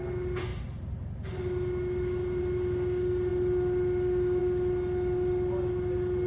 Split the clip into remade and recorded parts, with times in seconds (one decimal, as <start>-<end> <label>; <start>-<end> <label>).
0.0-6.3 recorded